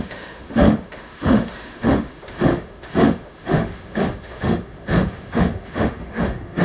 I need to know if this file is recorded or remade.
remade